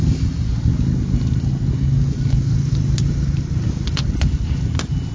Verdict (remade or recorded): recorded